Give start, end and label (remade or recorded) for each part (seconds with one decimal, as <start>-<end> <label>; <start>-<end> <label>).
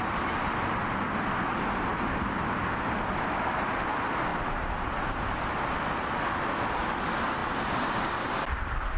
0.0-9.0 recorded